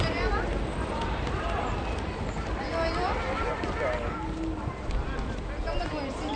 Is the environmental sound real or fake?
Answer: real